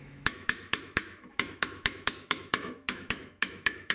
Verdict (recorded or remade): remade